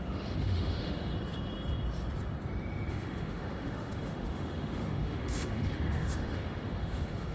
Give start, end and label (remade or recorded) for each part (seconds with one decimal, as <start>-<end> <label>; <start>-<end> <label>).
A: 0.0-1.1 remade; 1.1-2.9 recorded; 2.9-7.3 remade